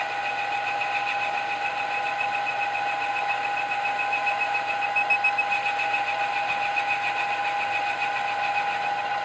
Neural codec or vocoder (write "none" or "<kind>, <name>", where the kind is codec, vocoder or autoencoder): none